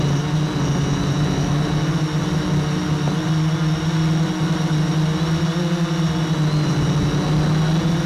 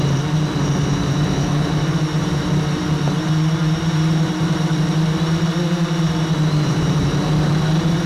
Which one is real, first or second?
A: first